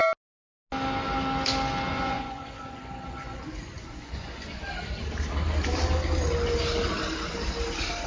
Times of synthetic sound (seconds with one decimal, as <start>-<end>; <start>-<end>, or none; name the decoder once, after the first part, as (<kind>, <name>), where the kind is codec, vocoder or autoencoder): 1.9-4.6 (vocoder, Vocos)